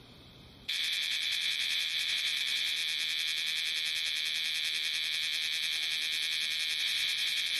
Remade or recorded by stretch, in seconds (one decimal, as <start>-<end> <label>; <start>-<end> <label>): 0.0-2.8 remade; 2.8-6.8 recorded; 6.8-7.6 remade